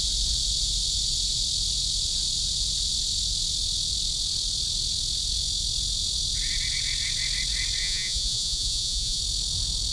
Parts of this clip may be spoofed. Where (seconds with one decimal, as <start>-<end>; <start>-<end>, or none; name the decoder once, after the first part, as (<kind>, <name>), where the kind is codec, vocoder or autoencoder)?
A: 7.8-9.2 (vocoder, Vocos)